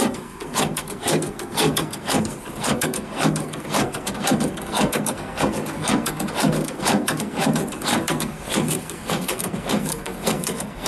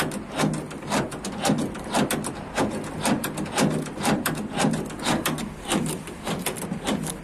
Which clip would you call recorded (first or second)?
second